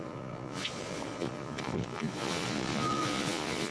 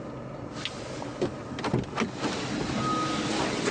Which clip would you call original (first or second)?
second